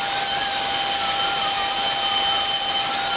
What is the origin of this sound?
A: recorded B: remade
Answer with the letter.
A